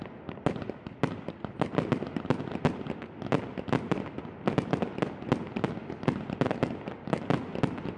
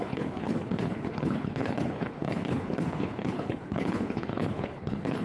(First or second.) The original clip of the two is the first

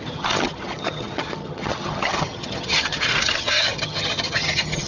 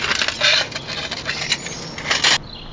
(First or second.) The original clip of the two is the second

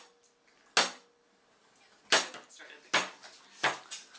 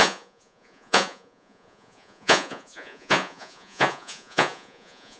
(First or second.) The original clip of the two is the first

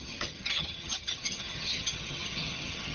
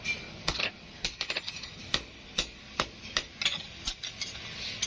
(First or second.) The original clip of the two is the second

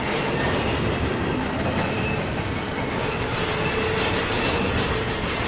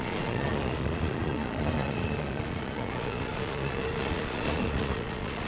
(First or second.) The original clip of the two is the first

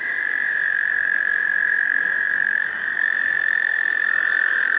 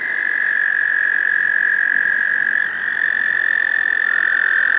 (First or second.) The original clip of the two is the second